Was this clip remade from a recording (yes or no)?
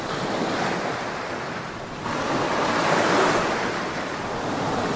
no